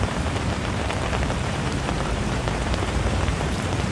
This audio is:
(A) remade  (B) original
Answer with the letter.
A